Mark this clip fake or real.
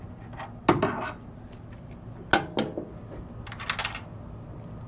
real